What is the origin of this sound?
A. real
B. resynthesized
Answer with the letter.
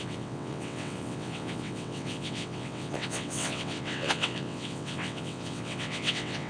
B